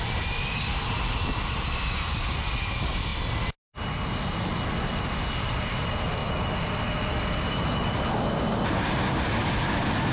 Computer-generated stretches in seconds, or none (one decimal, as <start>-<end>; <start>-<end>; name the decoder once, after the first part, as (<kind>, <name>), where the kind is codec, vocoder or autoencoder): none